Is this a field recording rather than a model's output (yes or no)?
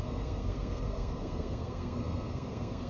no